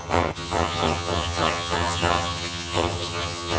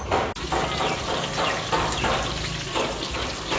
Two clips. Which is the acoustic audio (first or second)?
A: second